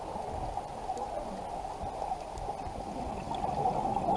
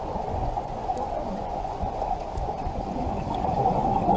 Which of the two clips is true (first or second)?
first